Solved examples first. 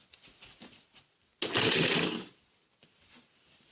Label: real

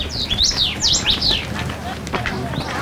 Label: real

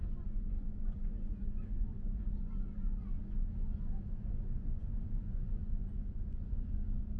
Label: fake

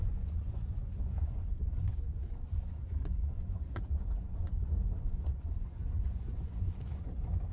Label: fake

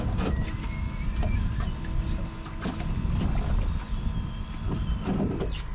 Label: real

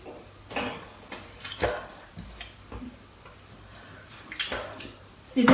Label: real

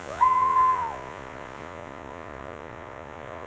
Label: fake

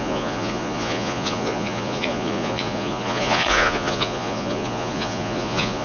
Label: fake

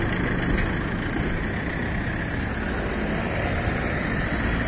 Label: real